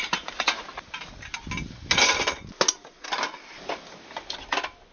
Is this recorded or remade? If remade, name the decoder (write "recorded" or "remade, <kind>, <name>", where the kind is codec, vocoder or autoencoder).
recorded